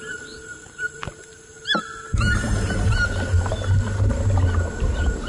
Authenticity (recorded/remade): recorded